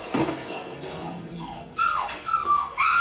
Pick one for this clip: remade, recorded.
remade